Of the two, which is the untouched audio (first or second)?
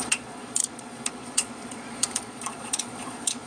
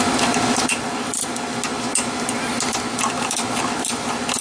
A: second